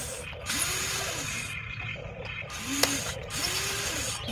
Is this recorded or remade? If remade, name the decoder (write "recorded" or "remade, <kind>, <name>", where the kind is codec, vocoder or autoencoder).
remade, vocoder, BigVGAN v2